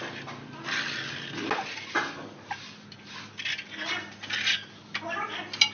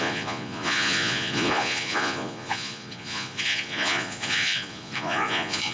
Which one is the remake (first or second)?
second